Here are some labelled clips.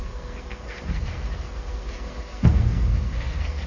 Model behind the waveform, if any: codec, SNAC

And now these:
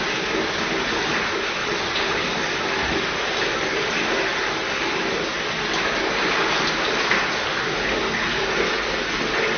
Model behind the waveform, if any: none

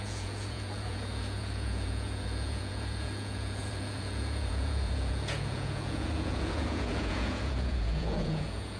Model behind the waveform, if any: vocoder, Vocos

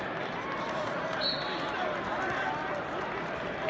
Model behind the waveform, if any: none